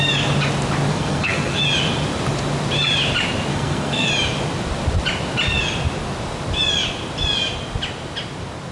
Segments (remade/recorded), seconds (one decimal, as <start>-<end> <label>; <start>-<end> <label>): 0.0-0.9 recorded; 0.9-1.6 remade; 1.6-3.5 recorded; 3.5-4.1 remade; 4.1-8.7 recorded

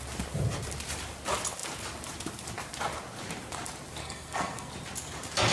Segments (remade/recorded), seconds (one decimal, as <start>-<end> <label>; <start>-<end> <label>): 0.0-4.0 recorded; 4.0-4.7 remade; 4.7-5.5 recorded